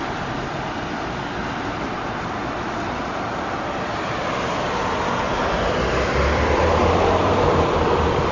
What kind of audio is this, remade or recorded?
remade